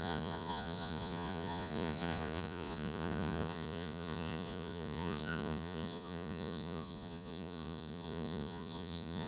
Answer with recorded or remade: remade